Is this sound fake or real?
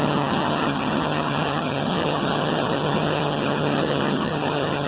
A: fake